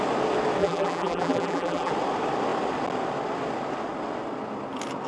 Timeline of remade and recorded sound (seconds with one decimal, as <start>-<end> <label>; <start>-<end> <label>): 0.0-0.6 recorded; 0.6-1.9 remade; 1.9-5.1 recorded